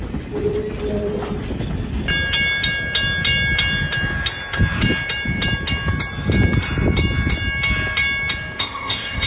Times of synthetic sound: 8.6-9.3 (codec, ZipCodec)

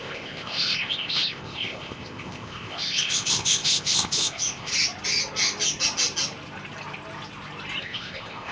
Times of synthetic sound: 0.0-4.7 (codec, ZipCodec); 7.8-8.5

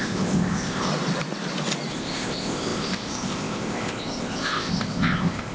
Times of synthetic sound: 0.0-0.9 (codec, ZipCodec); 1.9-5.5

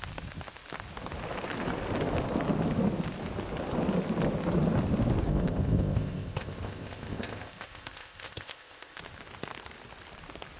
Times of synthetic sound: 5.3-9.0 (codec, ZipCodec)

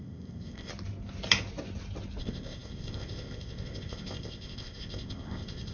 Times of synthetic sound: 0.0-0.7 (codec, ZipCodec); 2.2-5.7